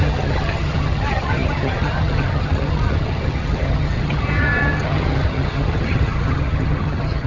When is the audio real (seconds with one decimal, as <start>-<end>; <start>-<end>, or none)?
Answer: none